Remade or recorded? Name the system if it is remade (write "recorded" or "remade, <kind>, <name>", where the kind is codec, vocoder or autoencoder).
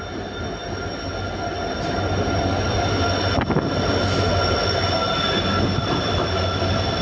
recorded